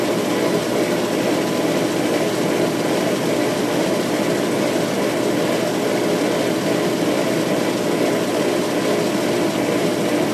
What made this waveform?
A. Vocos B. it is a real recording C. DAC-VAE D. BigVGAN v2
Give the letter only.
B